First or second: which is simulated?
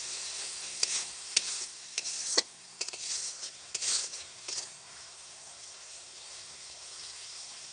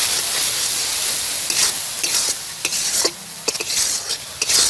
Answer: first